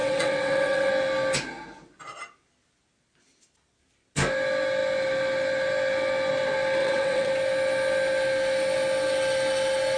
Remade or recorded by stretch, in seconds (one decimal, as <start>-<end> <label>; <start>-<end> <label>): 0.0-0.9 remade; 0.9-6.8 recorded; 6.8-7.3 remade; 7.3-10.0 recorded